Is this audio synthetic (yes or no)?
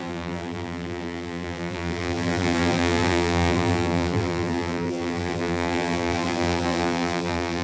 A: yes